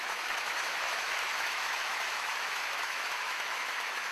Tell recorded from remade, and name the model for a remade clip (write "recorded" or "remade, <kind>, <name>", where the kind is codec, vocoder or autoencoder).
remade, autoencoder, DAC-VAE